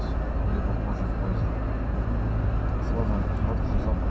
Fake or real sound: real